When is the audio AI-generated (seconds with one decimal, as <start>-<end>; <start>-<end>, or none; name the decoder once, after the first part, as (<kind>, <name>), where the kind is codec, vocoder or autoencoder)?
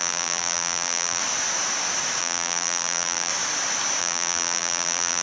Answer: 0.0-1.2 (vocoder, BigVGAN v2); 2.2-3.3; 4.0-5.2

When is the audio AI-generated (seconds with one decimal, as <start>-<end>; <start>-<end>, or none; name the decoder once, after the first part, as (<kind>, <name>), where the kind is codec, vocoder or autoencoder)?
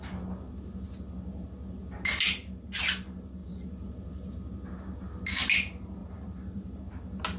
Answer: 3.4-4.3 (vocoder, BigVGAN v2); 6.0-6.8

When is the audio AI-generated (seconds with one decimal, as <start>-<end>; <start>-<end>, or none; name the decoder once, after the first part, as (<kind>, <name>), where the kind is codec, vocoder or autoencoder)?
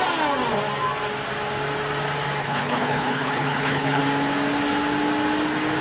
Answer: 2.4-4.0 (codec, HILCodec)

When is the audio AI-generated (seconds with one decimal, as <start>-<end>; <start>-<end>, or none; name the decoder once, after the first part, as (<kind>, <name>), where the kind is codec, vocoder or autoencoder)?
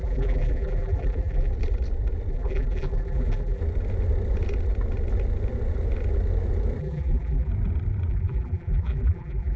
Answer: 0.0-1.5 (vocoder, BigVGAN v2); 2.3-3.6; 6.8-7.5; 8.1-9.6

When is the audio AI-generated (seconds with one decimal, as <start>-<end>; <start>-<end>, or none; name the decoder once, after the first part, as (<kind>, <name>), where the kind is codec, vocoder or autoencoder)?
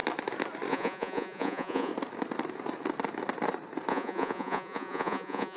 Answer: 0.7-1.9 (vocoder, Vocos); 3.9-5.6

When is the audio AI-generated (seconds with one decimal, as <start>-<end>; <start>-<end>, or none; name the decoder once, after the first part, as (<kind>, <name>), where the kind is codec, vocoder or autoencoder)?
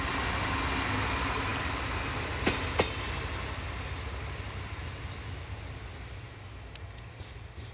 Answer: none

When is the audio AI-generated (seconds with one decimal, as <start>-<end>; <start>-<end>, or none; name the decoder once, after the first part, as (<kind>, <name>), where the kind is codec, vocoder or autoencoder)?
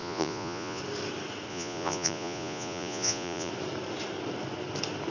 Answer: 0.0-0.8 (vocoder, Vocos); 1.5-3.5